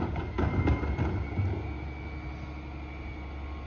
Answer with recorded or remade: recorded